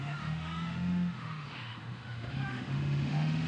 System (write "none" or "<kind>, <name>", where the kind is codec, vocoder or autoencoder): autoencoder, DAC-VAE